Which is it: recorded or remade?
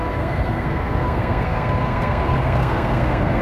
remade